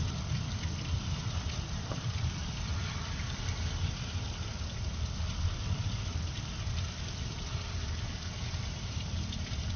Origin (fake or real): fake